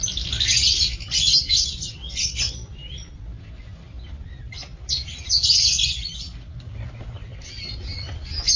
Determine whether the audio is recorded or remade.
recorded